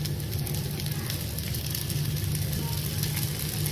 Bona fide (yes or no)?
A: yes